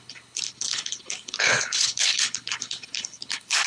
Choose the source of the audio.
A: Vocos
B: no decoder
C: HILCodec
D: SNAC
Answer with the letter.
C